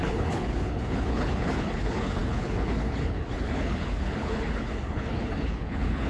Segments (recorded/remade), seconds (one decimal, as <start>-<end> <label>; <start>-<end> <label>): 0.0-6.1 remade